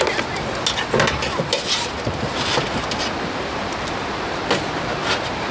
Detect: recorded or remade recorded